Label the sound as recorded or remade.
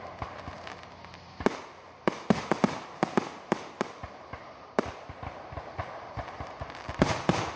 recorded